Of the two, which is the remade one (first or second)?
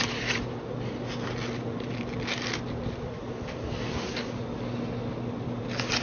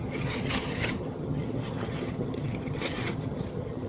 second